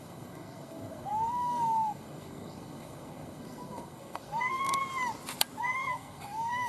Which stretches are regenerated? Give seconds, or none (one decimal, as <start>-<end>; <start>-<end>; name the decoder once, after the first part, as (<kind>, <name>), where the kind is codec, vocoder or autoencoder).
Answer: 0.0-4.8 (codec, SNAC); 5.6-6.7